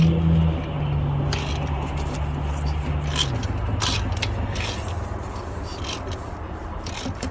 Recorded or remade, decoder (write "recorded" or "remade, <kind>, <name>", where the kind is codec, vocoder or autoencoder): recorded